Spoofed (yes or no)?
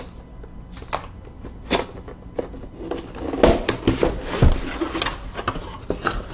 no